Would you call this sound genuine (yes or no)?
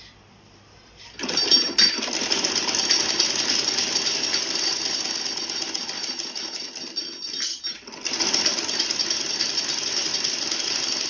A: yes